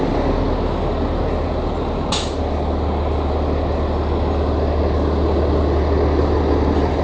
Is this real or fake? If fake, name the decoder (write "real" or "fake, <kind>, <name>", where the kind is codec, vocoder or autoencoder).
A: real